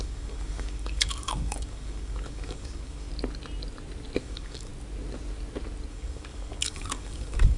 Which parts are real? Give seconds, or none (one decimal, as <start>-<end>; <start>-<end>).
3.1-4.2; 4.7-5.9